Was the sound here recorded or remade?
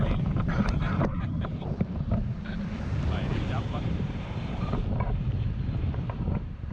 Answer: remade